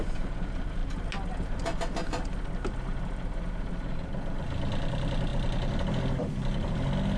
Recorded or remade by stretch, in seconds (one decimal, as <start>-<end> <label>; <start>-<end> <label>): 0.0-7.2 recorded